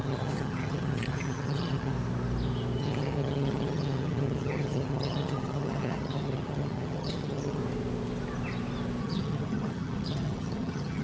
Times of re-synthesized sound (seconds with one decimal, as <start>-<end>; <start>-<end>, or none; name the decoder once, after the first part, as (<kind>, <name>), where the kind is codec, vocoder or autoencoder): 0.0-1.9 (vocoder, HiFi-GAN); 2.8-7.6; 9.0-11.0